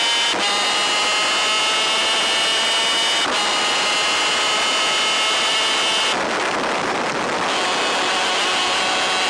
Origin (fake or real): real